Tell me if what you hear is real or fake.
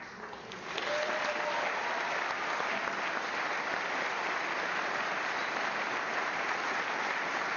real